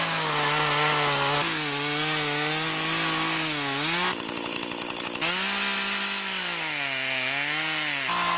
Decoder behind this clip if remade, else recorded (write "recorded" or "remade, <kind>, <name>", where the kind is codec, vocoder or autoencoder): recorded